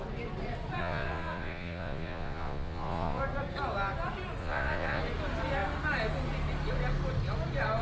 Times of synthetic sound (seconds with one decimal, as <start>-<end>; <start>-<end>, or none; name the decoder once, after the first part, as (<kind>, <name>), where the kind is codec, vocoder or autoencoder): 0.8-3.2 (vocoder, Vocos); 4.4-5.0